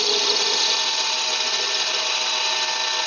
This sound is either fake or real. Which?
real